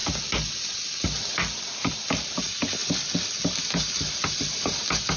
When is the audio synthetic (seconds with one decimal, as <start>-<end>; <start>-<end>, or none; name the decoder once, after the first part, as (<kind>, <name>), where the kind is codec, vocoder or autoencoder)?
none